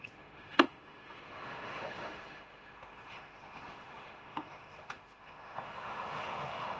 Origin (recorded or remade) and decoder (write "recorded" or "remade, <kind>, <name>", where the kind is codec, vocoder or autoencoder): remade, autoencoder, DAC-VAE